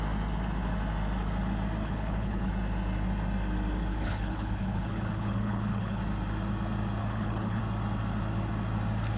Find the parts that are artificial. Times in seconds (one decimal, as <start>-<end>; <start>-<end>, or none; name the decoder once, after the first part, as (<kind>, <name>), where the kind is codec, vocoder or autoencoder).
1.8-2.5 (codec, HILCodec); 3.9-6.0; 7.0-7.6